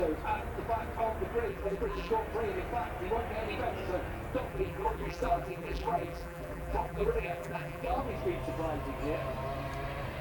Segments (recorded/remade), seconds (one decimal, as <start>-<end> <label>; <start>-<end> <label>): 0.0-1.5 recorded; 1.5-2.1 remade; 2.1-4.5 recorded; 4.5-8.0 remade; 8.0-10.2 recorded